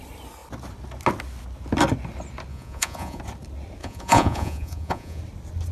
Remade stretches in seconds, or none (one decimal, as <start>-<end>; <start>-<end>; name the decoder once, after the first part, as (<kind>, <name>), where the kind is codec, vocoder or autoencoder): 2.5-3.2 (vocoder, Vocos); 3.8-5.2